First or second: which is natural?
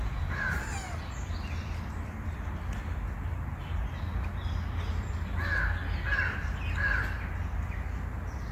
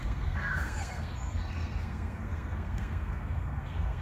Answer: first